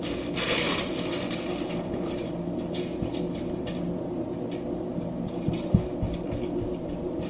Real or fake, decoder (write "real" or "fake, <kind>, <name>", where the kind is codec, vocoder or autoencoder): real